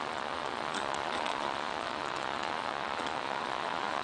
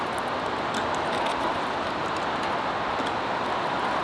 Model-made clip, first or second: first